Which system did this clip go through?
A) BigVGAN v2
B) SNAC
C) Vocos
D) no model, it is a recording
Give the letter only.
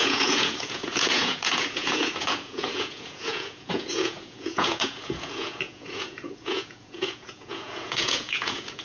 C